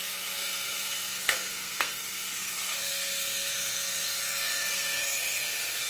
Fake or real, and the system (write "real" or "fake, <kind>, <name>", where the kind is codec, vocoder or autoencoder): fake, codec, SNAC